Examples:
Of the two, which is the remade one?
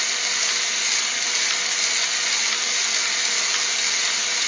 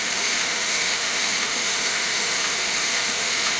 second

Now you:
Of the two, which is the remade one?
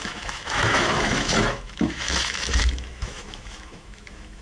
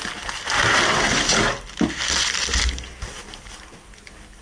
first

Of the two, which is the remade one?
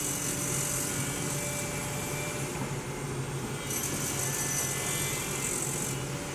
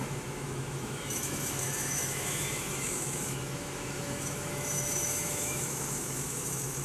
second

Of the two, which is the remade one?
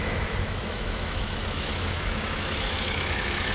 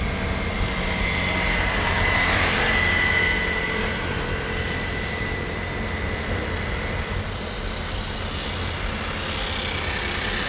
first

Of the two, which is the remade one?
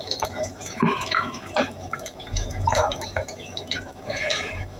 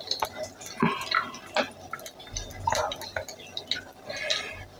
first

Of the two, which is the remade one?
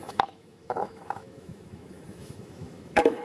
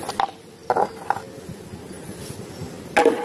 first